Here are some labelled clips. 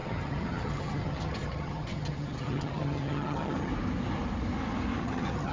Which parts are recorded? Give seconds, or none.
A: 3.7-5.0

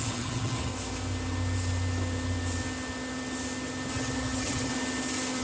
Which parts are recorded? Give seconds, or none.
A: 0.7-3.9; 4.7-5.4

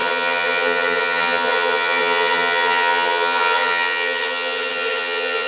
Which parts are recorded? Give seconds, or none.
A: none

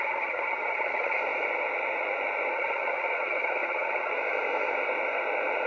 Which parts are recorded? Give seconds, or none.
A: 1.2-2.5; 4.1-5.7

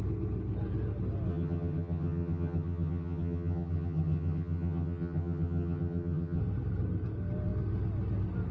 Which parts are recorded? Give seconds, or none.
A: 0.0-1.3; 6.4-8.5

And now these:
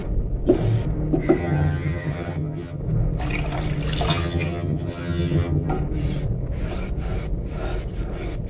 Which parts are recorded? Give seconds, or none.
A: 0.0-1.4; 2.8-4.1; 5.7-8.5

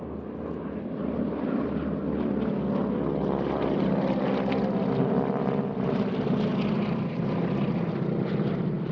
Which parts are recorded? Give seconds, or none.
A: 0.0-8.9

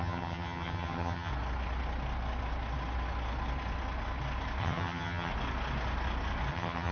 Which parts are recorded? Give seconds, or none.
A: 1.3-4.6; 5.3-6.5